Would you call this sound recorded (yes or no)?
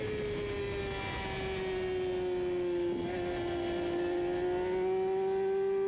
yes